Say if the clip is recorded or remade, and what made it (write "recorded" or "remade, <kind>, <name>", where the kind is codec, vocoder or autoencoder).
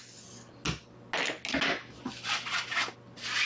recorded